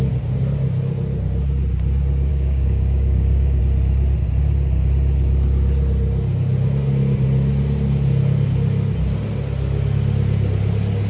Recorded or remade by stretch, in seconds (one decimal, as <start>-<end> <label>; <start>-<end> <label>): 0.0-2.3 recorded; 2.3-3.6 remade; 3.6-11.1 recorded